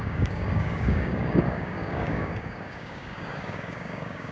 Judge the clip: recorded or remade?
remade